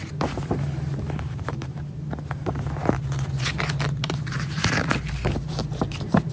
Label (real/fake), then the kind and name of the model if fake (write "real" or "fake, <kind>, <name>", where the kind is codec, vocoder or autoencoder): fake, vocoder, BigVGAN v2